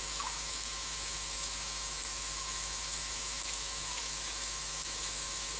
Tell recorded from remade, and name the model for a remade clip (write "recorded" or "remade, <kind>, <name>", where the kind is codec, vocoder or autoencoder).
remade, autoencoder, DAC-VAE